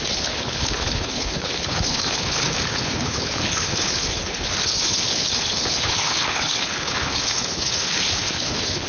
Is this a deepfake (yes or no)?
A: yes